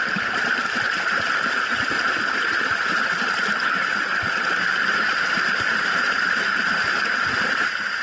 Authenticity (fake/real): real